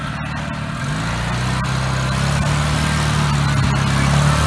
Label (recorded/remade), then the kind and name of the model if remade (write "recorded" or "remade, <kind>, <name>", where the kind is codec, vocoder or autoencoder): recorded